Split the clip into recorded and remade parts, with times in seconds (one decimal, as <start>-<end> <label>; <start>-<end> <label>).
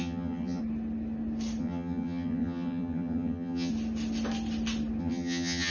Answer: 0.0-0.6 remade; 0.6-1.6 recorded; 1.6-3.7 remade; 3.7-5.0 recorded; 5.0-5.7 remade